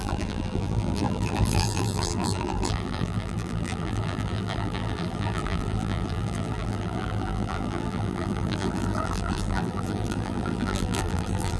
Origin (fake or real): fake